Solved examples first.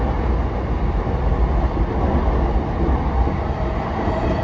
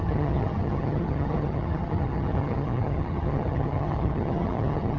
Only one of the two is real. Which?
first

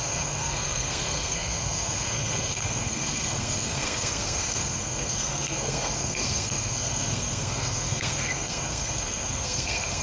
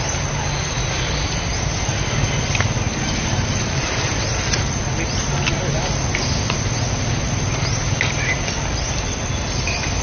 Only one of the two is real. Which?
second